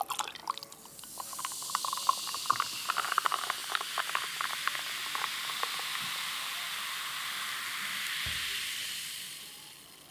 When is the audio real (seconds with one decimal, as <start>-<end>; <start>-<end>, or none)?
0.4-1.4; 3.6-5.0; 6.5-7.0